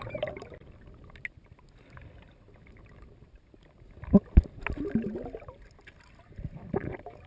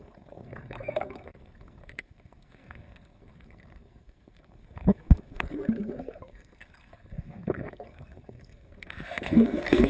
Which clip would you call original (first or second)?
first